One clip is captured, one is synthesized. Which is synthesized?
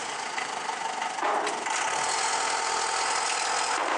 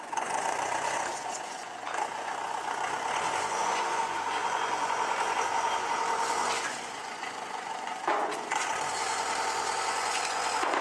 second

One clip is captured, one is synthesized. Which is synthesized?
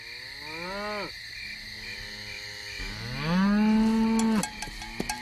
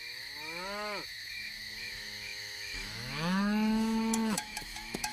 second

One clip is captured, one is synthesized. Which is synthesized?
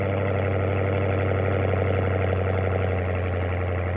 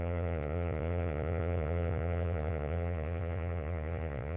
second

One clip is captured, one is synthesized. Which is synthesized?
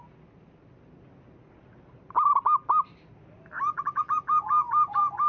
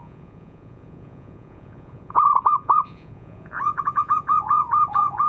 second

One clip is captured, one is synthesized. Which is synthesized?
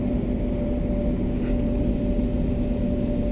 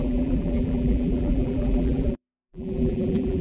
second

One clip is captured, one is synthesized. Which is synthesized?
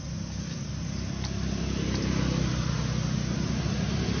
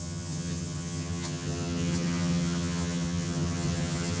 second